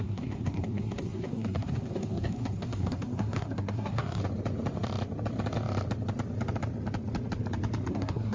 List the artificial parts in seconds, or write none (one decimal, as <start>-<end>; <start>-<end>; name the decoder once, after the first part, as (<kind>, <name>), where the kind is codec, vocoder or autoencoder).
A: 0.0-4.2 (codec, SNAC); 7.9-8.3